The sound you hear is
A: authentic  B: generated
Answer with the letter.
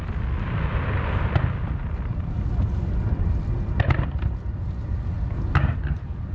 A